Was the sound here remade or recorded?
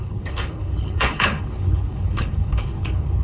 remade